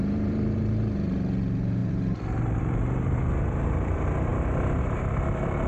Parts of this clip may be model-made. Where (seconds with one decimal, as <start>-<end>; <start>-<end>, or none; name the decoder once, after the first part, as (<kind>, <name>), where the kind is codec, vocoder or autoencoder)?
0.0-4.3 (vocoder, BigVGAN v2); 4.8-5.7